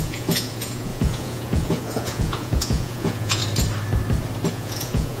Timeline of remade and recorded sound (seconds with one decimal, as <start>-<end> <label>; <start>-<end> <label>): 0.0-3.4 remade; 3.4-4.5 recorded; 4.5-5.2 remade